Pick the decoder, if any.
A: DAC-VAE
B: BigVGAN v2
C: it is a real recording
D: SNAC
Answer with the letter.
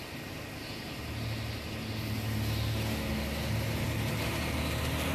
C